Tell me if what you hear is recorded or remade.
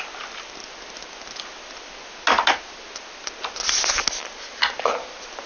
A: recorded